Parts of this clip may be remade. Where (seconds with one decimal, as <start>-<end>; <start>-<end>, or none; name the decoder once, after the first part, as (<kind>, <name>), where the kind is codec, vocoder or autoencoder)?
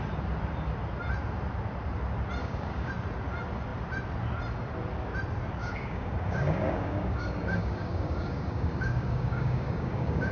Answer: 2.4-2.9 (codec, DAC); 5.6-10.3